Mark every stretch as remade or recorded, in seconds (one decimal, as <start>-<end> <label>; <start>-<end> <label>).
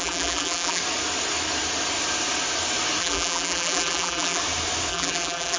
0.0-0.8 remade; 0.8-3.0 recorded; 3.0-4.4 remade; 4.4-4.9 recorded; 4.9-5.6 remade